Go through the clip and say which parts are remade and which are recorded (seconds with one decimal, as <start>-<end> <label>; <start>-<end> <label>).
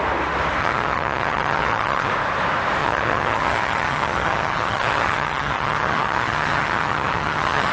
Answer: 0.0-0.6 recorded; 0.6-2.1 remade; 2.1-2.8 recorded; 2.8-7.7 remade